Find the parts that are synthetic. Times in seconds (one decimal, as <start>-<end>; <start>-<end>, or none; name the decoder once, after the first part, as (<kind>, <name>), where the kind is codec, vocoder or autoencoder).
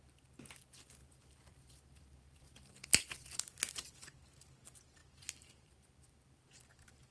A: 1.0-3.4 (vocoder, BigVGAN v2); 5.0-7.1